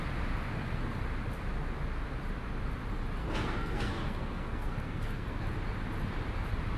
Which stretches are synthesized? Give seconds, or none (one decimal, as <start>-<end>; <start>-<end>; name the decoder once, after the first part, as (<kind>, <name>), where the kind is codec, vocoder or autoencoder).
0.5-1.0 (codec, SNAC); 3.2-5.4